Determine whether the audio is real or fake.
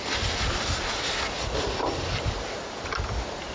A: real